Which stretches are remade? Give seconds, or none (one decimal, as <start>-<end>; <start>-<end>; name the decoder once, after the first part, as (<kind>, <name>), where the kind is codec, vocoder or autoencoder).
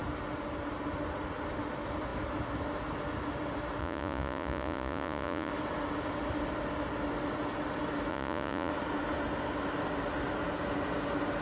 3.8-5.5 (vocoder, Vocos); 8.1-8.7